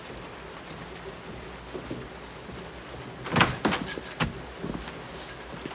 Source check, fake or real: real